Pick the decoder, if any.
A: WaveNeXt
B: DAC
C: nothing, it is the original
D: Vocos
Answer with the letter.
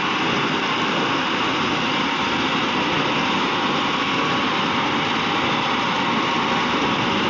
C